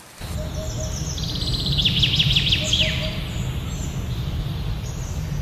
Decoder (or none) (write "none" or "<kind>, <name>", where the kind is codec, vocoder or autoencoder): none